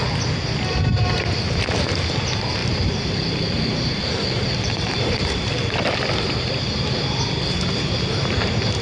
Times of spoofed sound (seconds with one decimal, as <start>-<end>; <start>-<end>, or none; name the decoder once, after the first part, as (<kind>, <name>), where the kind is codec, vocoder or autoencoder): 2.6-5.9 (vocoder, BigVGAN v2)